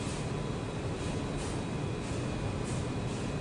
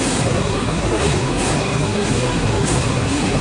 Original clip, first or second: first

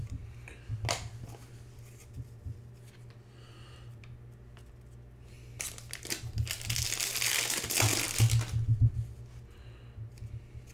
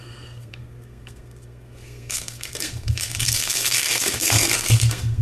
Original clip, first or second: first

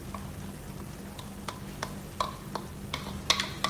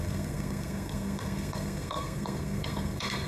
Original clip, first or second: first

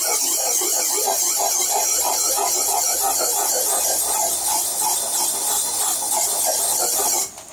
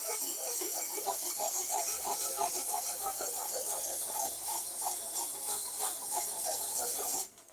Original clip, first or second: first